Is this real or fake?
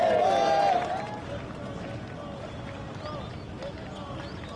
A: real